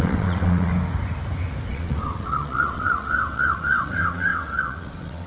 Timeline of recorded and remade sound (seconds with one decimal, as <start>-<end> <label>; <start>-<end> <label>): 0.0-0.7 remade; 0.7-1.7 recorded; 1.7-5.3 remade